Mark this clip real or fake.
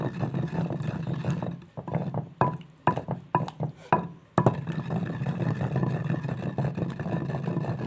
real